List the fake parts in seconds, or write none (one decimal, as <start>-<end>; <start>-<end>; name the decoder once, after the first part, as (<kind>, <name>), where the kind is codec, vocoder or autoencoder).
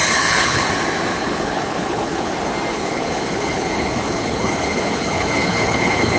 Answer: 0.0-0.7 (codec, HILCodec); 1.1-2.3; 2.7-6.2